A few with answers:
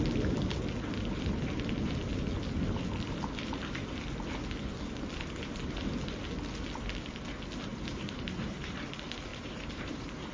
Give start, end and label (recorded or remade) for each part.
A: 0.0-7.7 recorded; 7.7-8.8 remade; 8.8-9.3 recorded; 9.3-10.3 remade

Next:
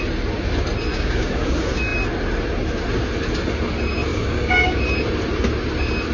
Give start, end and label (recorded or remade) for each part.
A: 0.0-0.9 recorded; 0.9-1.5 remade; 1.5-4.1 recorded; 4.1-4.8 remade; 4.8-6.1 recorded

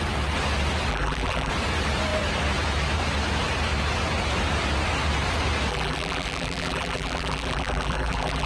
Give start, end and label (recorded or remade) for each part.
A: 0.0-0.9 recorded; 0.9-1.5 remade; 1.5-5.7 recorded; 5.7-8.5 remade

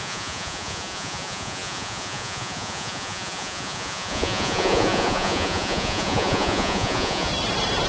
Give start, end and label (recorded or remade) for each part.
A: 0.0-7.3 remade; 7.3-7.9 recorded

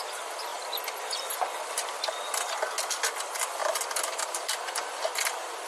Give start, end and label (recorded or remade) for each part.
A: 0.0-0.5 remade; 0.5-2.8 recorded; 2.8-5.7 remade

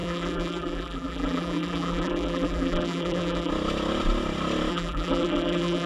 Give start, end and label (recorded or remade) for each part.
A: 0.0-3.5 remade; 3.5-4.7 recorded; 4.7-5.9 remade

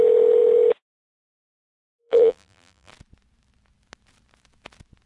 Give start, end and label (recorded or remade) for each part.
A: 0.0-2.0 recorded; 2.0-2.9 remade; 2.9-5.1 recorded